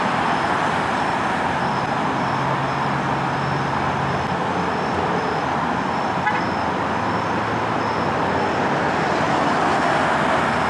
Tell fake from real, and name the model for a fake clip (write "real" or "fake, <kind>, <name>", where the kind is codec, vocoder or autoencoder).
real